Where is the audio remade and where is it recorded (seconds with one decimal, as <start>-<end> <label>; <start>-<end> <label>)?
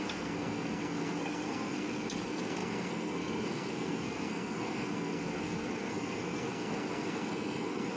0.0-8.0 remade